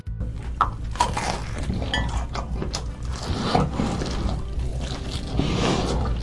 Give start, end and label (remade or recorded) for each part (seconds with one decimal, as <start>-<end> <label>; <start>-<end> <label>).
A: 0.0-3.7 recorded; 3.7-4.7 remade; 4.7-5.4 recorded; 5.4-6.2 remade